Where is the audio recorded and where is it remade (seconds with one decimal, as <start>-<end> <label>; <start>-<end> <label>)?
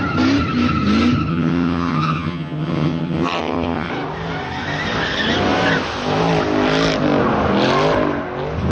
0.0-1.3 recorded; 1.3-3.9 remade; 3.9-8.7 recorded